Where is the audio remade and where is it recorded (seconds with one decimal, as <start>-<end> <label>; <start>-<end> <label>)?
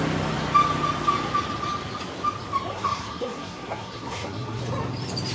0.0-2.7 recorded; 2.7-4.6 remade; 4.6-5.3 recorded